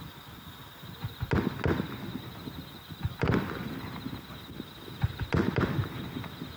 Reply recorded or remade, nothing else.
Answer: recorded